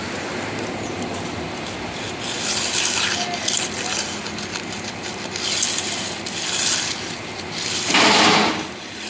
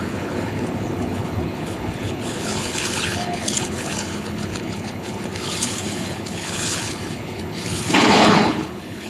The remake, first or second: second